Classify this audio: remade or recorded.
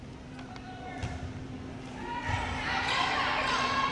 remade